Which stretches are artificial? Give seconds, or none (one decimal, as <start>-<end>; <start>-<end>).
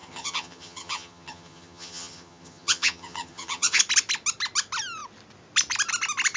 0.0-3.8